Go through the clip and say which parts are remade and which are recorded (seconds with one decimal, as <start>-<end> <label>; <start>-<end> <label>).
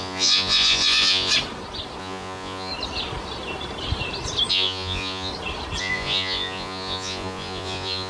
0.0-1.3 remade; 1.3-2.0 recorded; 2.0-2.7 remade; 2.7-4.5 recorded; 4.5-5.3 remade; 5.3-5.8 recorded; 5.8-8.1 remade